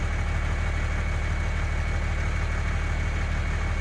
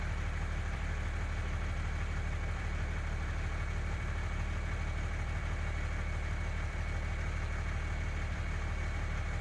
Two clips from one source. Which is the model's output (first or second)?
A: second